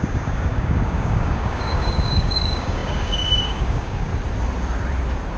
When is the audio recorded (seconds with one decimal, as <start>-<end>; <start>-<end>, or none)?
4.1-5.4